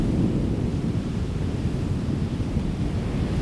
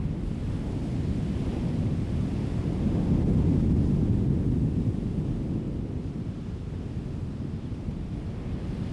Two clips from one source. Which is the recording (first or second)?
second